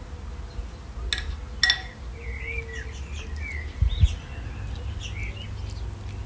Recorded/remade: recorded